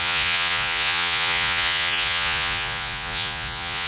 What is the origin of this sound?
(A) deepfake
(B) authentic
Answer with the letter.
A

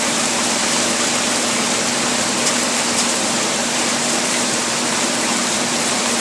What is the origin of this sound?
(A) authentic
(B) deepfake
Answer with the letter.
B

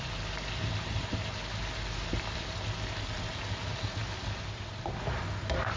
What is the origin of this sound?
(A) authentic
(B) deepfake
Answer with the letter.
A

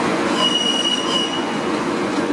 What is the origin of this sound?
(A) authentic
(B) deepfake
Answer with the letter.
B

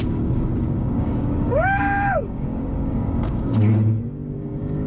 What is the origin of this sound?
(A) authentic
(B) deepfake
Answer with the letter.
B